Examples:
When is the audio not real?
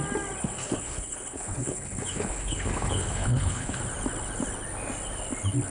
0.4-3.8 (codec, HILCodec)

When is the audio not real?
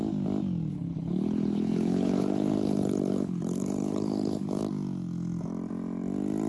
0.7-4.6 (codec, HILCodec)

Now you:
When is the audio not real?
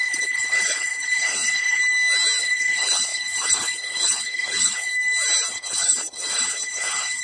0.0-1.8 (codec, HILCodec); 2.4-4.9; 5.5-7.2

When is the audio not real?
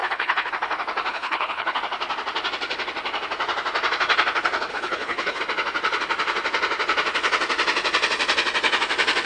0.0-0.5 (codec, HILCodec); 1.1-1.8; 4.7-5.4